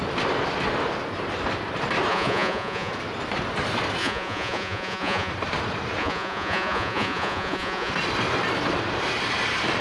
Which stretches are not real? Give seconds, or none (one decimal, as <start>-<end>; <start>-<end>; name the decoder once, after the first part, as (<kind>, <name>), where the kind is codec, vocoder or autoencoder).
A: 2.1-2.9 (vocoder, Vocos); 4.0-5.3; 6.0-7.9